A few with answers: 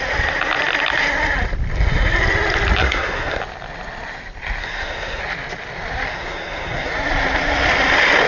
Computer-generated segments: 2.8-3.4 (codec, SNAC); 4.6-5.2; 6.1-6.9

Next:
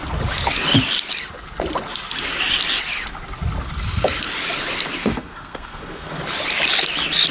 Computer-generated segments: 5.0-6.2 (codec, SNAC)

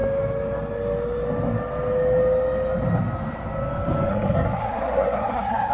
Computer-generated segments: 4.1-5.7 (codec, SNAC)

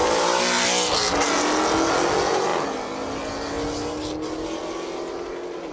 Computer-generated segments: none

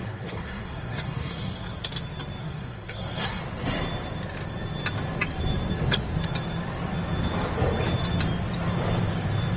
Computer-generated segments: 0.0-1.9 (codec, SNAC); 2.4-3.4

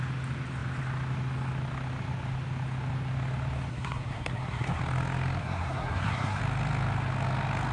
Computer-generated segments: 3.7-4.8 (codec, SNAC); 5.4-6.4

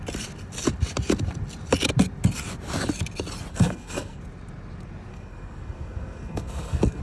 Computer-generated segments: 3.5-4.2 (codec, SNAC); 5.1-7.0

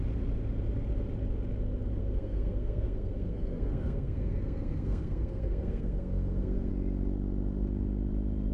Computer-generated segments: 2.0-6.7 (codec, SNAC)